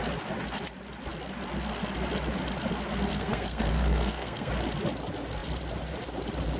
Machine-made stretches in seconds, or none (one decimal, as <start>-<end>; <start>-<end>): 3.1-4.5